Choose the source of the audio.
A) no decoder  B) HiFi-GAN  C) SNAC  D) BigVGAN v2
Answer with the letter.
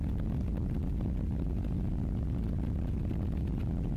A